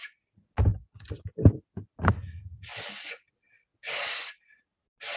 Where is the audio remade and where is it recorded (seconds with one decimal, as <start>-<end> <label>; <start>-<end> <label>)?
0.0-0.7 recorded; 0.7-1.3 remade; 1.3-5.2 recorded